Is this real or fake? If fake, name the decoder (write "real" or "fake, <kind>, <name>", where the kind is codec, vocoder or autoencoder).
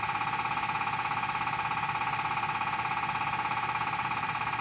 fake, vocoder, BigVGAN v2